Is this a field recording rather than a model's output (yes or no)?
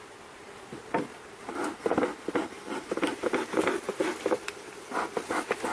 yes